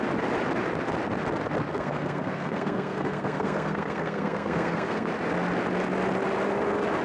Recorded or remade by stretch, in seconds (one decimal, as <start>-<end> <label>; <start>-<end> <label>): 0.0-1.7 recorded; 1.7-5.1 remade; 5.1-7.0 recorded